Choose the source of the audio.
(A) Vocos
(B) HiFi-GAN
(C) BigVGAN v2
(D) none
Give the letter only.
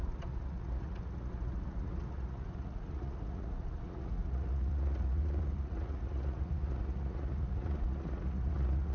A